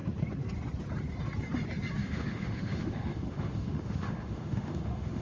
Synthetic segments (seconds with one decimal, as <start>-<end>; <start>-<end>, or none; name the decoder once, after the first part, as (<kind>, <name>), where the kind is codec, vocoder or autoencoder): 2.0-5.2 (autoencoder, DAC-VAE)